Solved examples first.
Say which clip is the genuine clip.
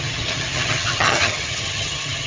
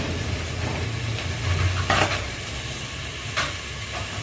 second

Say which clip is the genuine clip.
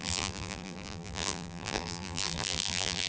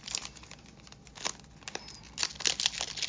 second